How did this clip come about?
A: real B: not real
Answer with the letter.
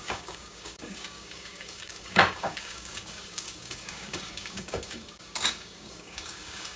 B